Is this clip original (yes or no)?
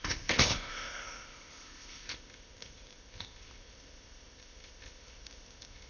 no